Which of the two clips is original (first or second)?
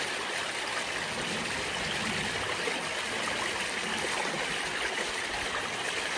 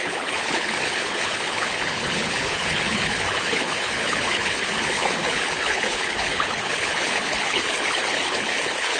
first